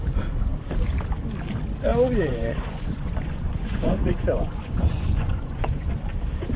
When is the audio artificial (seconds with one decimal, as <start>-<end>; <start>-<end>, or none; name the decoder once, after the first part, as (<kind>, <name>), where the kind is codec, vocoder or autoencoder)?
1.9-5.9 (vocoder, Vocos)